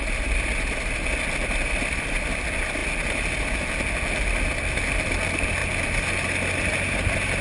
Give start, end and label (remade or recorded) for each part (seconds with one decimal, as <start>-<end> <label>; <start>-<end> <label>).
0.0-7.4 recorded